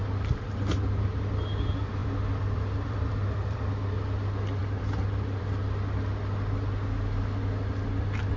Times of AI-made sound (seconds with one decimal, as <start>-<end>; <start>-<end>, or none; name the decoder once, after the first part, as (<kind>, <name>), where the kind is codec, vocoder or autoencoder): 2.0-3.9 (vocoder, BigVGAN v2); 4.6-5.6